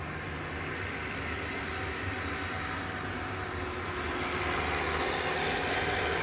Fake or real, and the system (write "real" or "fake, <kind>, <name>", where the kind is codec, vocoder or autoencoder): real